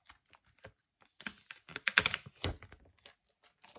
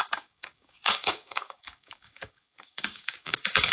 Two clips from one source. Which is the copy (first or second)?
second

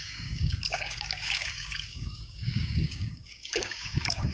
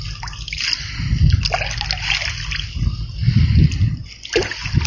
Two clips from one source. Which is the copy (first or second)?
first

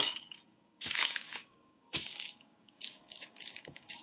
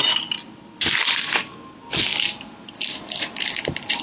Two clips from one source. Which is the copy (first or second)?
first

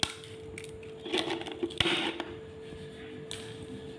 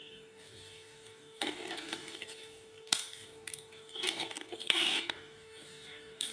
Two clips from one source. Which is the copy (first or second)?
second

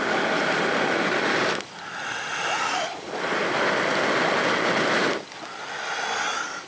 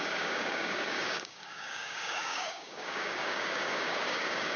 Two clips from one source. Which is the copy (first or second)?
second